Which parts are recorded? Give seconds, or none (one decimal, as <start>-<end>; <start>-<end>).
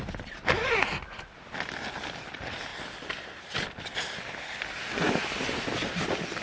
0.0-6.4